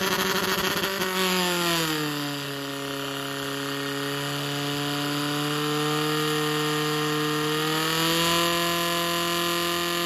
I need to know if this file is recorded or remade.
recorded